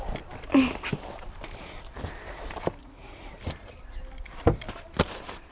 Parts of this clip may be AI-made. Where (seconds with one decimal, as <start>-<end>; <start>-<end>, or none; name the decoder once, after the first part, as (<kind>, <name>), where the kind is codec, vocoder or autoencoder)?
2.8-3.4 (vocoder, Vocos)

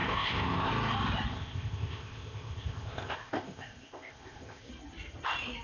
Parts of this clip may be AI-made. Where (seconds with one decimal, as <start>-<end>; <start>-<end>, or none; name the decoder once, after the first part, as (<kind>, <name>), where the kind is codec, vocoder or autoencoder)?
0.0-0.7 (codec, ZipCodec); 1.3-4.7

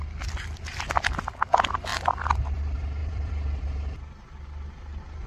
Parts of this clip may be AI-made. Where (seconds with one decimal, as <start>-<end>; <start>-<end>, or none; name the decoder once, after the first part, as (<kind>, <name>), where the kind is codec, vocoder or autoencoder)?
1.9-2.6 (vocoder, BigVGAN v2); 3.0-3.6